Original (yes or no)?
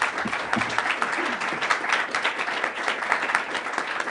yes